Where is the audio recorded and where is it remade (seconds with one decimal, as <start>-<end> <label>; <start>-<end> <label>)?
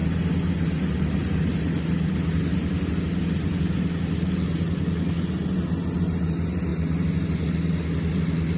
0.0-8.6 recorded